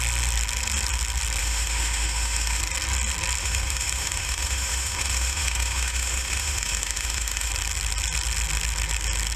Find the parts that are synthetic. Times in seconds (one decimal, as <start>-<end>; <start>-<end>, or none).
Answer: 1.4-2.6; 3.4-7.5